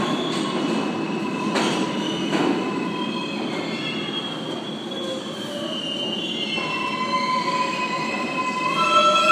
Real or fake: real